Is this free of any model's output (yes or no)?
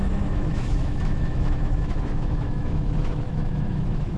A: no